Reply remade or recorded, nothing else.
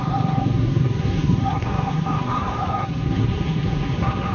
remade